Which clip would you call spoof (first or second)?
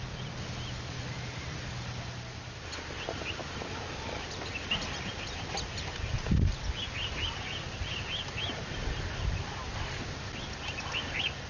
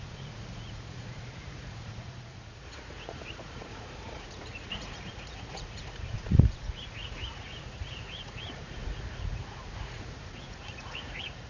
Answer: second